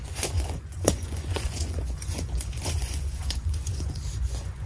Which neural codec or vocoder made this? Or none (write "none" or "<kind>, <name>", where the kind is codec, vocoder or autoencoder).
vocoder, Vocos